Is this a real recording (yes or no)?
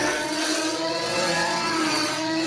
no